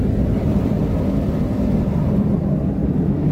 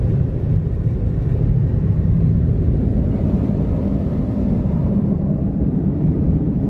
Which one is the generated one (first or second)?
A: second